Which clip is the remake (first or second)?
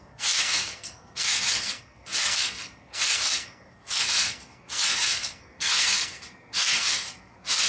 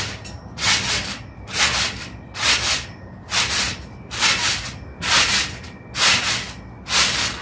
first